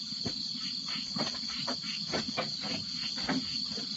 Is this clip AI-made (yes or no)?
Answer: no